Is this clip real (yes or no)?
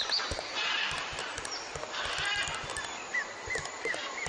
yes